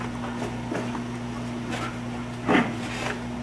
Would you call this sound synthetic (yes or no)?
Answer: no